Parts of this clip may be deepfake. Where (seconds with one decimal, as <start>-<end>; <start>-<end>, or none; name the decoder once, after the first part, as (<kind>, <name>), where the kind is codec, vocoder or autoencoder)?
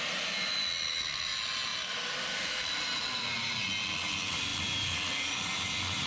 1.7-3.5 (vocoder, BigVGAN v2); 4.5-6.1